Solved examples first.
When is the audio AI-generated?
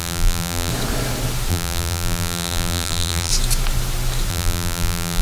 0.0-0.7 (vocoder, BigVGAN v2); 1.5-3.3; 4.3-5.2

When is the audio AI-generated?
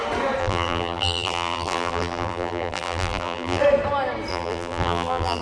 0.4-3.6 (vocoder, BigVGAN v2); 4.3-5.4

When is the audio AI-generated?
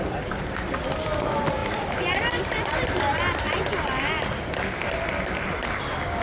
1.6-3.0 (vocoder, BigVGAN v2)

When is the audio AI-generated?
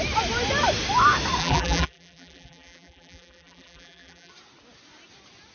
1.4-4.3 (vocoder, BigVGAN v2)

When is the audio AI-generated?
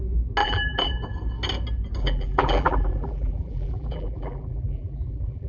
0.4-0.9 (vocoder, BigVGAN v2); 2.0-5.5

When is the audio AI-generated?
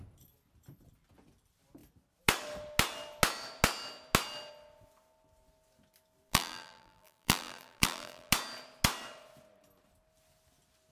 6.3-8.3 (vocoder, BigVGAN v2)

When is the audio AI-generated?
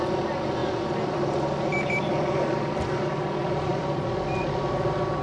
0.6-2.9 (vocoder, BigVGAN v2); 3.7-4.6